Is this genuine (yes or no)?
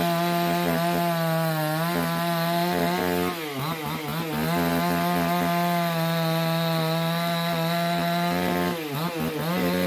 yes